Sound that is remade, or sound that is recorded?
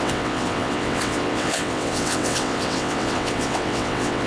remade